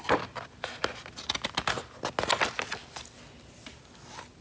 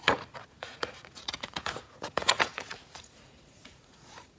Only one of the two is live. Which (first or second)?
first